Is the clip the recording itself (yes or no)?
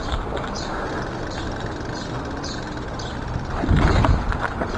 yes